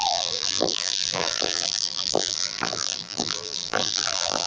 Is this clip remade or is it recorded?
remade